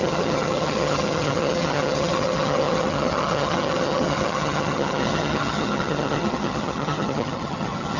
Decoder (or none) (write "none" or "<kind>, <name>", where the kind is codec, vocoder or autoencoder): vocoder, HiFi-GAN